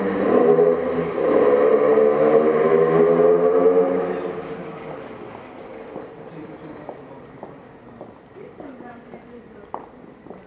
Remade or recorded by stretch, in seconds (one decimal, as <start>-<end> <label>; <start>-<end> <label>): 0.0-10.5 recorded